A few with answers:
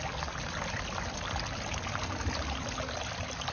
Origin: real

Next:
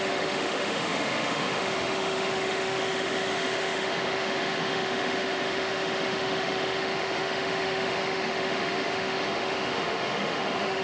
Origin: fake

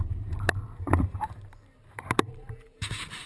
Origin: fake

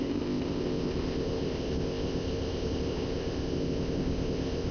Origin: fake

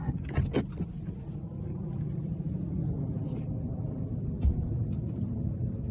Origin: real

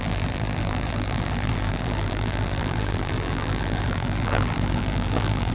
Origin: fake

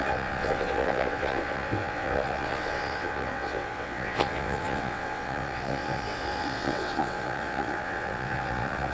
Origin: fake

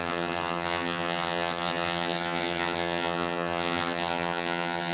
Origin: fake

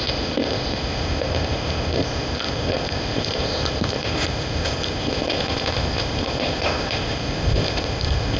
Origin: fake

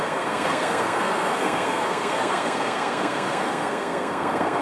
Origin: fake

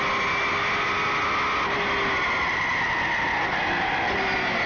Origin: real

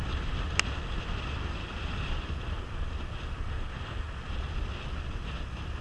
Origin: real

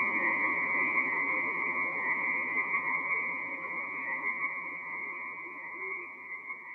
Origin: fake